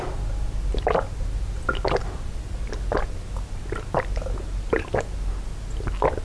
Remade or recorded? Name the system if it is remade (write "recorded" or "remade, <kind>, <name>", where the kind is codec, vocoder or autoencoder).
recorded